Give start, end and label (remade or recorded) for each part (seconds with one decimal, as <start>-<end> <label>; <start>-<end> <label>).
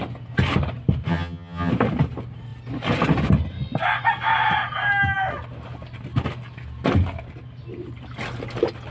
0.0-1.1 recorded; 1.1-1.7 remade; 1.7-8.9 recorded